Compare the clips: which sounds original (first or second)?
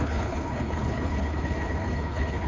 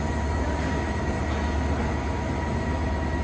second